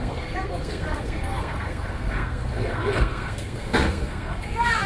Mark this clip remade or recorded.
remade